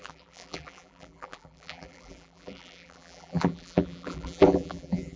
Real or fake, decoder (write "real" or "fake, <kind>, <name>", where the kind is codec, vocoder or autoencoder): fake, vocoder, BigVGAN v2